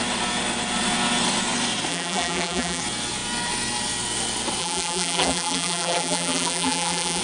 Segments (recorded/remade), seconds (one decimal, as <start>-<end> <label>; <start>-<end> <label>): 0.0-1.9 recorded; 1.9-2.8 remade; 2.8-4.6 recorded; 4.6-7.2 remade